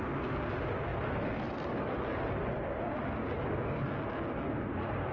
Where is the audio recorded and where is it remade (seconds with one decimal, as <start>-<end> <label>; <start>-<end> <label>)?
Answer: 0.0-5.1 recorded